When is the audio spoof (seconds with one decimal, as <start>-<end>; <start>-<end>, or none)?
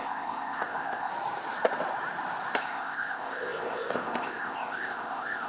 0.0-1.1; 2.6-5.5